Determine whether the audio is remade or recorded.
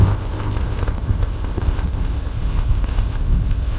remade